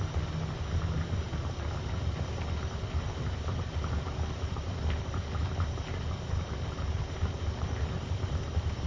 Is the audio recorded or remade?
recorded